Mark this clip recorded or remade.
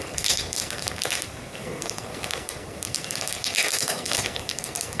remade